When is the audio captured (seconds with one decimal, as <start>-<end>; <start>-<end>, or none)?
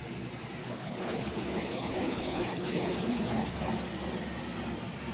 0.0-0.6; 3.7-5.1